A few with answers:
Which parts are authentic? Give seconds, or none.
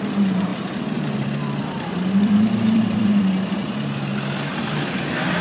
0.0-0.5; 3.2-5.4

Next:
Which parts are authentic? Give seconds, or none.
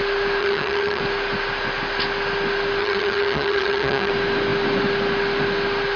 0.0-0.4; 1.0-2.8; 4.1-6.0